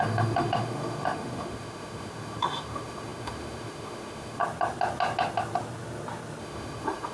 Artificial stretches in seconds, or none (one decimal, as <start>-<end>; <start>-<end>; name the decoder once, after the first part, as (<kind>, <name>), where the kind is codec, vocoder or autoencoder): 0.0-4.4 (autoencoder, DAC-VAE); 6.4-7.1